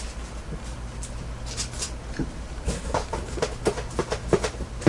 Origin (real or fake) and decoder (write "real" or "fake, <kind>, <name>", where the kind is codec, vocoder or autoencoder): real